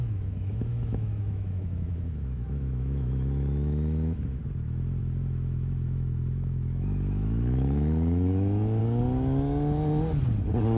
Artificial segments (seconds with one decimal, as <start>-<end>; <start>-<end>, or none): 0.0-4.4; 5.0-8.8